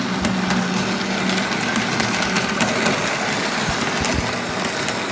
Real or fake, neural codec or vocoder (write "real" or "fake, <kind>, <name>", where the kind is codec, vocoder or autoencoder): real